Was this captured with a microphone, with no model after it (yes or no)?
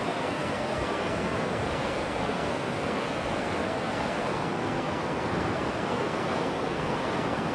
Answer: no